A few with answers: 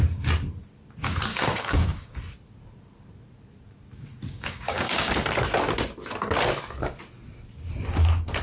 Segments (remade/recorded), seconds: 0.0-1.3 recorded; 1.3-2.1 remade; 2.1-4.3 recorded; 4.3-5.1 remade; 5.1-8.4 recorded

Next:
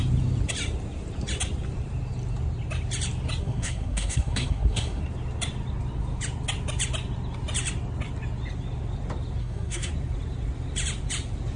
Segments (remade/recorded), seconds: 0.0-3.4 recorded; 3.4-5.0 remade; 5.0-9.4 recorded; 9.4-9.9 remade; 9.9-11.6 recorded